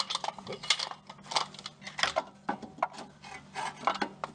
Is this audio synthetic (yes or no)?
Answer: no